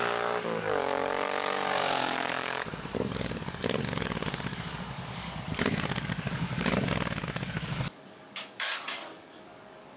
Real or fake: fake